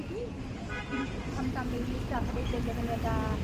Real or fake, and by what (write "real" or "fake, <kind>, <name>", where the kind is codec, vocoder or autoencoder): real